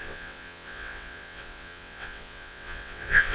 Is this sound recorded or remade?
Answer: remade